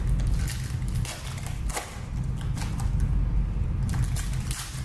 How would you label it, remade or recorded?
recorded